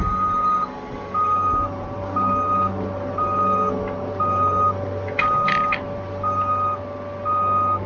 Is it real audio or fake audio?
real